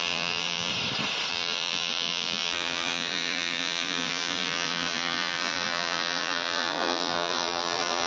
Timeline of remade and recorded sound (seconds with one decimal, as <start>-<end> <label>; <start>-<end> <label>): 0.0-0.7 remade; 0.7-1.3 recorded; 1.3-8.1 remade